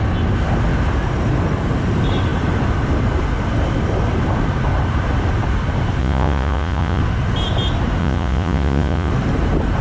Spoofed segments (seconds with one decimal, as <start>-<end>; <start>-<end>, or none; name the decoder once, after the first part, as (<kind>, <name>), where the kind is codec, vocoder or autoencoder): 6.0-7.0 (vocoder, Vocos); 8.0-9.1